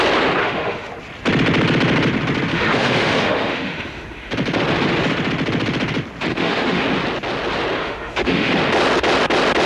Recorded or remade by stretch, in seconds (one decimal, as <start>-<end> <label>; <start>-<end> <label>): 0.0-0.4 recorded; 0.4-0.9 remade; 0.9-2.5 recorded; 2.5-4.3 remade; 4.3-6.3 recorded; 6.3-6.8 remade; 6.8-7.8 recorded; 7.8-8.5 remade; 8.5-9.7 recorded